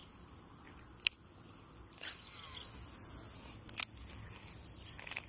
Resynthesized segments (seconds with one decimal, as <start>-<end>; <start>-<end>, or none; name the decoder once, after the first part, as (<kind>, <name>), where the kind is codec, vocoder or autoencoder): none